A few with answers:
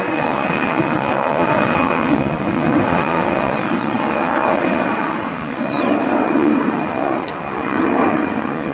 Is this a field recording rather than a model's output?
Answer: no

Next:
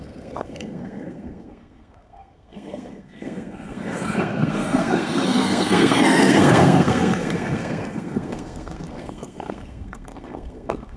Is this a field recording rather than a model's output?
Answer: no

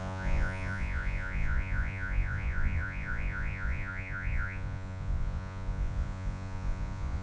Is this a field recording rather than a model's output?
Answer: no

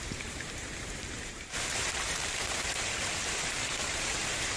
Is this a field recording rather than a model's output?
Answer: no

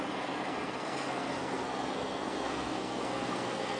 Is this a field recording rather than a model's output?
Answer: no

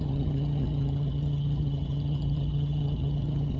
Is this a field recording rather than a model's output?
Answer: no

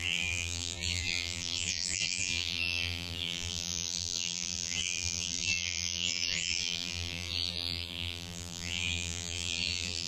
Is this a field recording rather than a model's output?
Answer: no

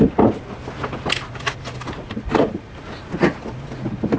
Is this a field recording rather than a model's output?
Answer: yes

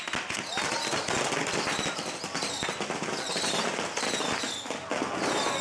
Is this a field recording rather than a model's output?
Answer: yes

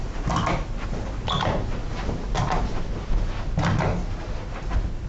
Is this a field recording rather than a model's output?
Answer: yes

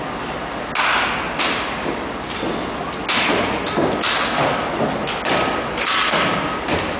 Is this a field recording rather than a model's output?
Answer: yes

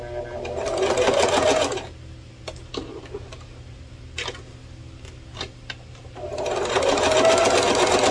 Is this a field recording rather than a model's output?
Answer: yes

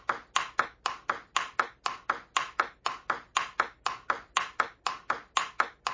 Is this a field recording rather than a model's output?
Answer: yes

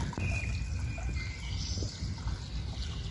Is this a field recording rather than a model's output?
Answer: yes